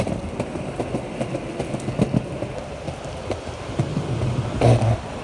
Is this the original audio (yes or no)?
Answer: yes